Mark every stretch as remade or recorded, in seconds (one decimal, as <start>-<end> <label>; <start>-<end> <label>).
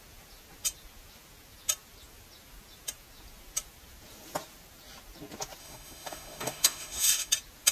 0.0-5.6 recorded; 5.6-7.3 remade; 7.3-7.7 recorded